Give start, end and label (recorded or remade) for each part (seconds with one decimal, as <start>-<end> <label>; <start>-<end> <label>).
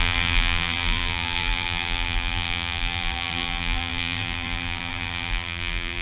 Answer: 0.0-6.0 remade